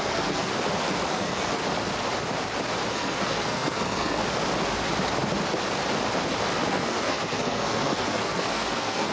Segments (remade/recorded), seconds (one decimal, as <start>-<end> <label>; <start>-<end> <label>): 0.0-0.5 remade; 0.5-1.1 recorded; 1.1-1.6 remade; 1.6-2.9 recorded; 2.9-4.2 remade; 4.2-6.7 recorded; 6.7-9.1 remade